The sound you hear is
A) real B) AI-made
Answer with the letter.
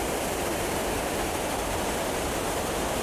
A